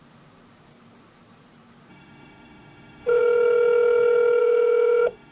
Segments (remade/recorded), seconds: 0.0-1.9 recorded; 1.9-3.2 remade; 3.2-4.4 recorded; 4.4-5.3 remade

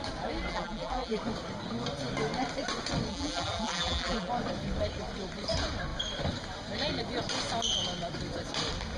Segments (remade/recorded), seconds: 0.0-0.5 recorded; 0.5-1.2 remade; 1.2-3.1 recorded; 3.1-4.3 remade; 4.3-9.0 recorded

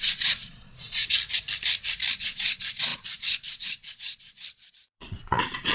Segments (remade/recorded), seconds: 0.0-1.0 remade; 1.0-2.2 recorded; 2.2-5.7 remade

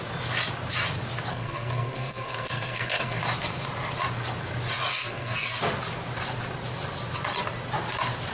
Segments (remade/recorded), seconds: 0.0-1.3 recorded; 1.3-3.2 remade; 3.2-4.9 recorded; 4.9-5.6 remade; 5.6-8.3 recorded

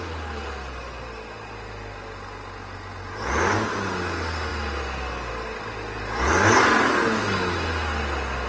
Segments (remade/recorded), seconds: 0.0-8.5 recorded

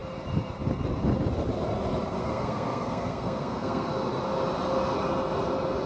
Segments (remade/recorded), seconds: 0.0-2.2 recorded; 2.2-3.9 remade; 3.9-5.9 recorded